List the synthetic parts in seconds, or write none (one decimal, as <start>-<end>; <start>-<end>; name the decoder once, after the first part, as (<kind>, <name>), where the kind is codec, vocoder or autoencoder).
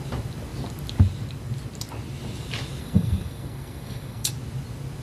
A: 2.8-4.3 (codec, SNAC)